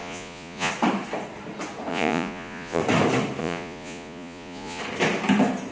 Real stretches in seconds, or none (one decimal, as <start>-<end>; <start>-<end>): 0.7-1.9; 2.8-3.4; 4.8-5.7